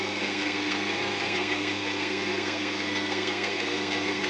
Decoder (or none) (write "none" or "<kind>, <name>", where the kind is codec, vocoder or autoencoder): codec, SNAC